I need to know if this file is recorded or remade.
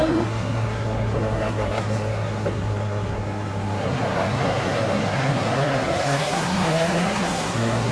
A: remade